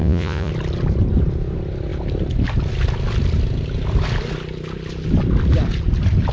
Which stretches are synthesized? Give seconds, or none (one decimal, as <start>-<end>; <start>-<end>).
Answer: 0.0-0.5